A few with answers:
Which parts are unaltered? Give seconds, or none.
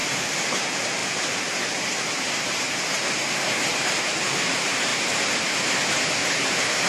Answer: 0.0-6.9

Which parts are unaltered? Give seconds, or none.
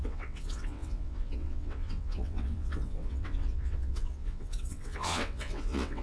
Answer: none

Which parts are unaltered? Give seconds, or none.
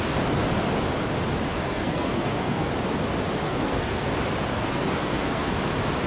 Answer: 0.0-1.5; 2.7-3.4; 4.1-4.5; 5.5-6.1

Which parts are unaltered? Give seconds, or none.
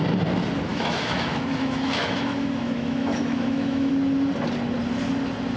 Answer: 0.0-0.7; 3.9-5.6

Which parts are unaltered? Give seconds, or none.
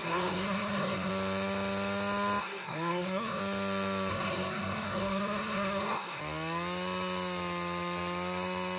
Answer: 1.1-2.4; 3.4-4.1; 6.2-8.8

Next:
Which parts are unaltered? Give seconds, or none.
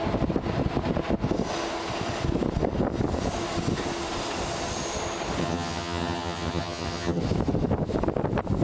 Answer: 0.0-5.4; 7.2-8.6